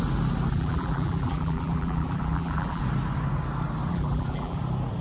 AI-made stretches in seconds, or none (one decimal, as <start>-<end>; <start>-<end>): 0.5-2.8; 3.9-4.6